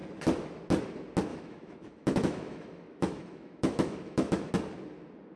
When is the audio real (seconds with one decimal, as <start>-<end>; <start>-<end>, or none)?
0.0-1.3; 4.5-5.4